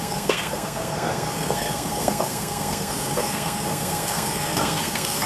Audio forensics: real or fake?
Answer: fake